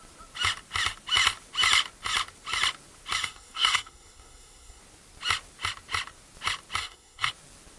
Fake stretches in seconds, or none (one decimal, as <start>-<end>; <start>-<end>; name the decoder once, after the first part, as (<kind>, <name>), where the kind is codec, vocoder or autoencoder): 3.2-4.8 (codec, SNAC); 6.8-7.3